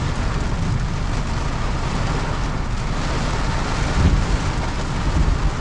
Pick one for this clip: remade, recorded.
recorded